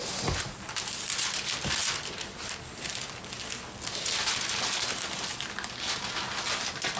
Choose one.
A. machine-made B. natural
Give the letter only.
B